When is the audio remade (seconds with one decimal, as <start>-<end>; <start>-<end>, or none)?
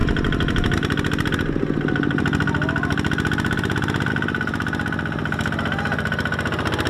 none